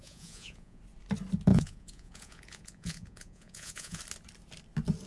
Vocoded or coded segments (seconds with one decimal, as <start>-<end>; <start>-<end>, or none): 0.0-0.8; 1.5-4.0